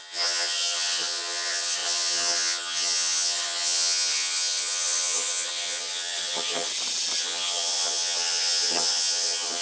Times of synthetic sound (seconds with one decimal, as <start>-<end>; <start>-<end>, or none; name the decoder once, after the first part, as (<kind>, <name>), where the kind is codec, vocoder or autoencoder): 0.0-6.7 (vocoder, HiFi-GAN); 7.2-9.6

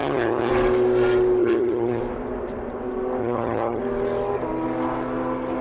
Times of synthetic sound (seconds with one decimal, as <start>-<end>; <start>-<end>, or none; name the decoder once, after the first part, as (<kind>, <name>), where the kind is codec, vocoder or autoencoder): 0.0-0.5 (vocoder, HiFi-GAN); 1.4-2.0; 3.2-3.8

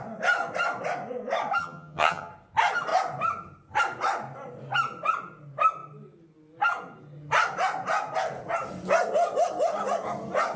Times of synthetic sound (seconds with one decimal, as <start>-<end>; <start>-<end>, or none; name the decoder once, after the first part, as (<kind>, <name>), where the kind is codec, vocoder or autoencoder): 1.6-2.3 (vocoder, HiFi-GAN)

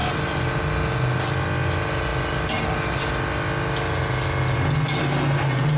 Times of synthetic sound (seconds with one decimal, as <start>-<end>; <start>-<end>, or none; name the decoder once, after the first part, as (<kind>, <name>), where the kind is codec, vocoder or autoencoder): none

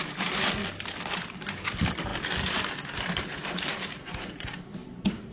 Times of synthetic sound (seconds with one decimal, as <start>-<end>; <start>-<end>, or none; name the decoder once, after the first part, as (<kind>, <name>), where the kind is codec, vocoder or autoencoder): 0.0-0.6 (vocoder, BigVGAN v2); 1.2-5.3

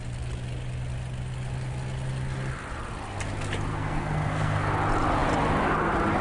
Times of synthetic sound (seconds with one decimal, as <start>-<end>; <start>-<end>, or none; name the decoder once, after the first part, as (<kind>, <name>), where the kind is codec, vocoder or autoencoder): 3.7-4.7 (codec, SNAC)